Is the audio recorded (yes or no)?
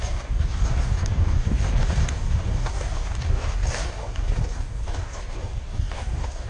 no